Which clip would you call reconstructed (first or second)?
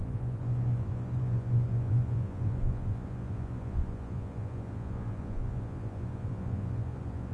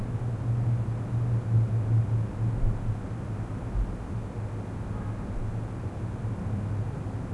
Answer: first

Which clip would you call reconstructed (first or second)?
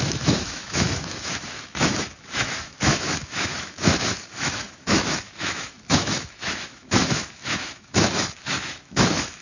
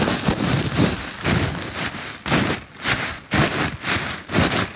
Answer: first